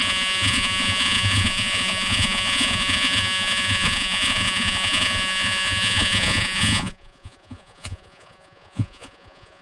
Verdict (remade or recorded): remade